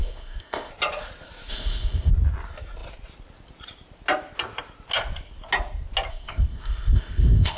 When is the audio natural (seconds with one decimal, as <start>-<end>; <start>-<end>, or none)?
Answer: 0.7-1.5; 2.1-6.1